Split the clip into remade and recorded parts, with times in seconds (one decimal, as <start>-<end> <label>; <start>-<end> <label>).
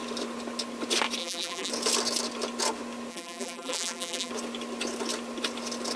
0.0-1.2 recorded; 1.2-1.7 remade; 1.7-3.1 recorded; 3.1-4.3 remade; 4.3-6.0 recorded